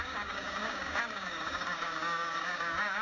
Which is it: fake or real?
fake